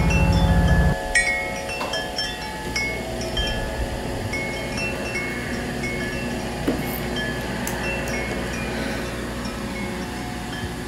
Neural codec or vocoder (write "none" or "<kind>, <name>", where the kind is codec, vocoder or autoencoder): none